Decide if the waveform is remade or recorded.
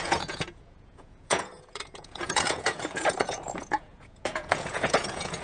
remade